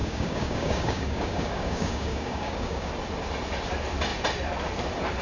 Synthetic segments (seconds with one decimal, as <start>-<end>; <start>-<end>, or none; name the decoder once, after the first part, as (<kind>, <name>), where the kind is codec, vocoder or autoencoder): 0.0-2.9 (codec, DAC)